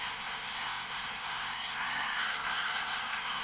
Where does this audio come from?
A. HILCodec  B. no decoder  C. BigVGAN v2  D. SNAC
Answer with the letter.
D